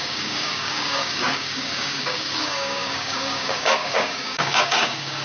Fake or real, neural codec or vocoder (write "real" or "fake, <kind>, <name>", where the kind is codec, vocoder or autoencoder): fake, codec, DAC